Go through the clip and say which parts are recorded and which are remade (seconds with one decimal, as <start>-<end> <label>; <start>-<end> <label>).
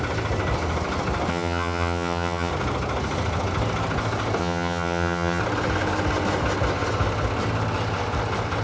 0.0-1.3 recorded; 1.3-2.5 remade; 2.5-4.4 recorded; 4.4-5.4 remade; 5.4-8.6 recorded